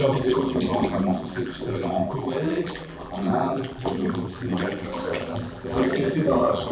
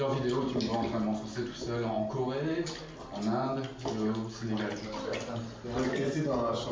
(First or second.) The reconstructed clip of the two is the first